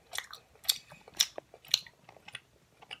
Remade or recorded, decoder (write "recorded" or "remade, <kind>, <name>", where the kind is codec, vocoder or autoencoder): recorded